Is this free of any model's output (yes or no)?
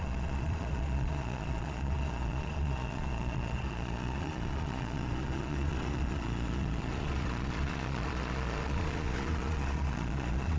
no